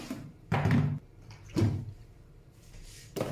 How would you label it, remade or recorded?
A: remade